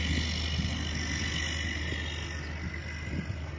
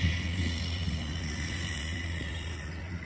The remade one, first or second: second